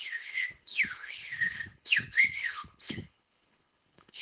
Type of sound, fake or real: fake